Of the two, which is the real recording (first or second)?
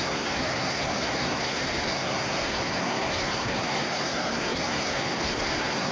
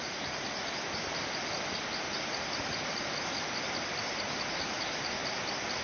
second